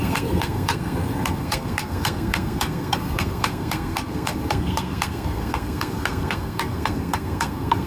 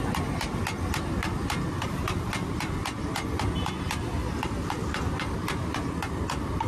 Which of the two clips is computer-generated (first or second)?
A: first